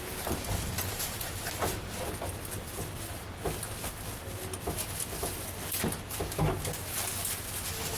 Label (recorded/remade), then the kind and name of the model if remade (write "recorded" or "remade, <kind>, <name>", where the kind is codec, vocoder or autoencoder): recorded